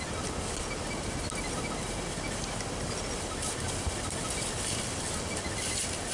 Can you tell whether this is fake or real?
real